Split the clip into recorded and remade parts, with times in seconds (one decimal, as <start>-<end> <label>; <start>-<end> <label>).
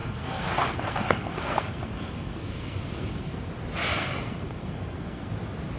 0.0-3.5 remade; 3.5-3.9 recorded; 3.9-5.3 remade; 5.3-5.8 recorded